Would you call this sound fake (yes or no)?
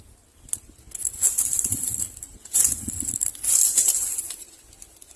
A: no